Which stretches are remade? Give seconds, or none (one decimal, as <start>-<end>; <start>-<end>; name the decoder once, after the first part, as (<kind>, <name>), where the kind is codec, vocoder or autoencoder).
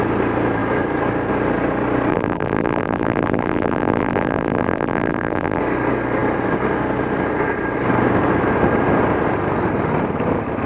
2.1-5.6 (vocoder, BigVGAN v2)